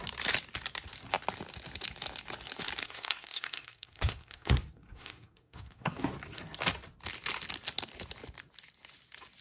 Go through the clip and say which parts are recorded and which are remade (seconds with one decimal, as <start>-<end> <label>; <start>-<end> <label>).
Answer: 0.0-2.8 recorded; 2.8-6.1 remade; 6.1-9.4 recorded